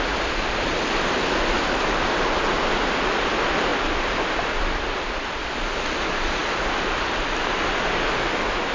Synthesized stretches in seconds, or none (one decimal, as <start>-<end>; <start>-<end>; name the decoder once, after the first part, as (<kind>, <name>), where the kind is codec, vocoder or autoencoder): none